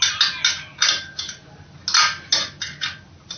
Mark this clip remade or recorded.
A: recorded